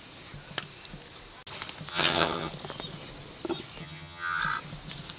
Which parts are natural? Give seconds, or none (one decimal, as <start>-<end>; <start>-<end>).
0.0-1.9; 2.5-3.8; 4.4-5.2

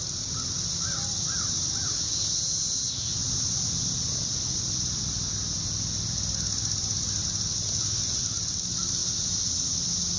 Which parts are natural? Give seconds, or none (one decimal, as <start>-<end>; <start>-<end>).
0.0-10.2

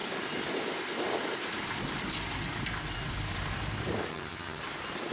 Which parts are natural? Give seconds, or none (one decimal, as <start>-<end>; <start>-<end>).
0.0-4.1; 4.6-5.1

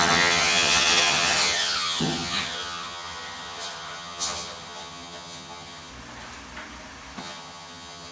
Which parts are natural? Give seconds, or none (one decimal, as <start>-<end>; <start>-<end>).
5.9-7.2